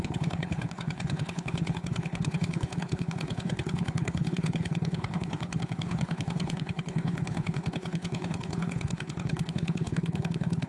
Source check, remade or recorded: remade